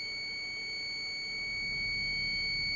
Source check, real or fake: real